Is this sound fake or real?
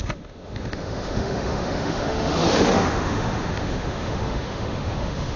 fake